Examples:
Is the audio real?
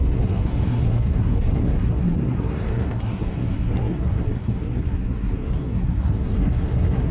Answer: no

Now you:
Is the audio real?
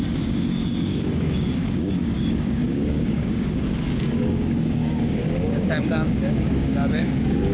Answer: no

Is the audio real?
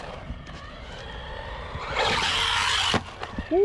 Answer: yes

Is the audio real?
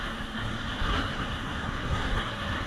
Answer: no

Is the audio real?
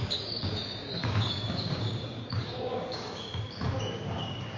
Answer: no